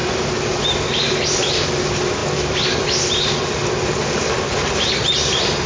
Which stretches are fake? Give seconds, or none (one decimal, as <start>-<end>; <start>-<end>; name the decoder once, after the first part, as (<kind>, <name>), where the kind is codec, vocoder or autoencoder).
none